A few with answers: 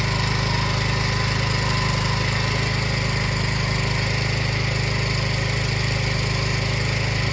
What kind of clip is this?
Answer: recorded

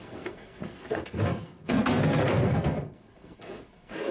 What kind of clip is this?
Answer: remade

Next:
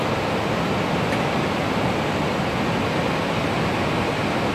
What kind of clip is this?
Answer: recorded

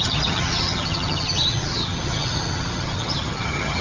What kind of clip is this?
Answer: remade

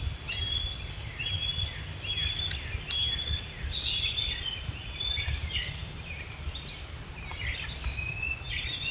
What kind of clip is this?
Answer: recorded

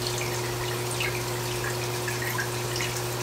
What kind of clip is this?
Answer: recorded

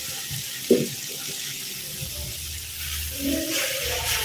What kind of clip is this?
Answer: recorded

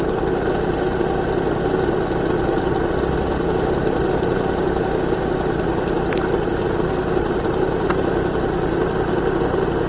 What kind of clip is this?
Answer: recorded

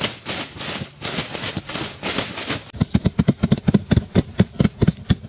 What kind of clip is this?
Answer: recorded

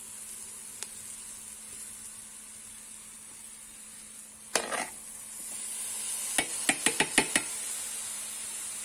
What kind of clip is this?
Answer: recorded